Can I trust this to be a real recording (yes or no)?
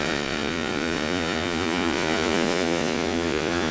no